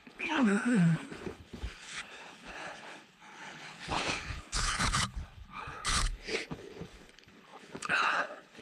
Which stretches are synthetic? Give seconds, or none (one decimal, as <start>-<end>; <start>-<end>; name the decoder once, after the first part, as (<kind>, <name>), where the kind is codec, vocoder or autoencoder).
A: 0.0-8.6 (codec, HILCodec)